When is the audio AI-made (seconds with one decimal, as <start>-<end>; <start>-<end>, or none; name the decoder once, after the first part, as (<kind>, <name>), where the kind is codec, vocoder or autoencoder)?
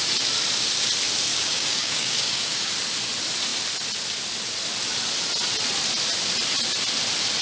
1.3-2.7 (codec, DAC)